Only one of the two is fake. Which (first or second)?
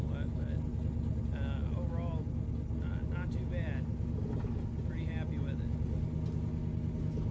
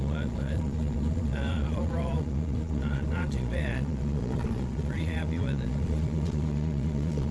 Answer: second